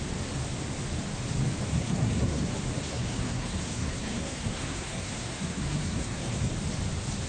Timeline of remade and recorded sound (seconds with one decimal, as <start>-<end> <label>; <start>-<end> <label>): 0.0-1.7 recorded; 1.7-2.5 remade; 2.5-2.9 recorded; 2.9-6.5 remade; 6.5-7.3 recorded